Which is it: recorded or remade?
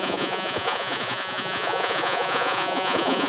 remade